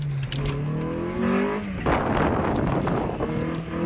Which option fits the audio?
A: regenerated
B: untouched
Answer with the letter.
B